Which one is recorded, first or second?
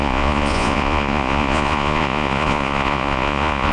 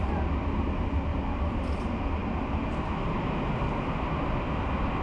second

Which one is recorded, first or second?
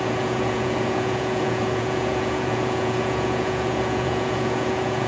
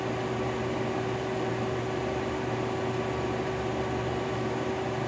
second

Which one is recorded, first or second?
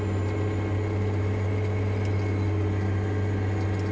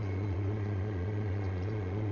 first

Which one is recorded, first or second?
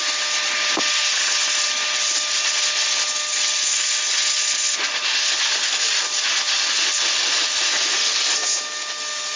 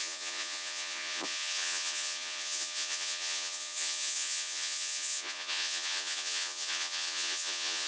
first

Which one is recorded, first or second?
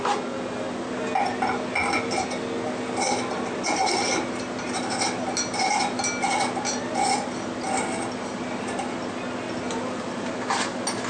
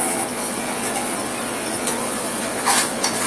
first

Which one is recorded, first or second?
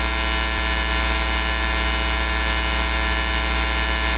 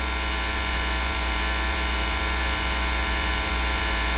first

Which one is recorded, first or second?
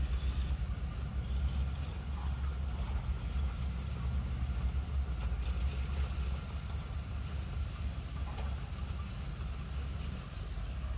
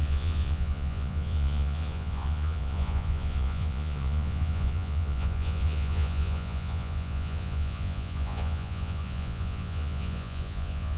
first